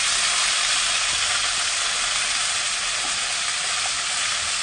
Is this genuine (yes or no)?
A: yes